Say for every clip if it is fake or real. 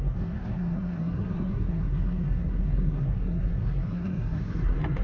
fake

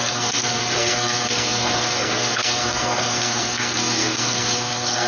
fake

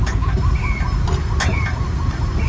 real